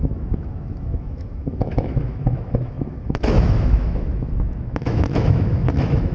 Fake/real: fake